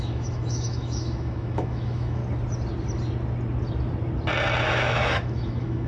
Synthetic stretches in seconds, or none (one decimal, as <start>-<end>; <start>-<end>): 0.0-2.2; 4.6-5.9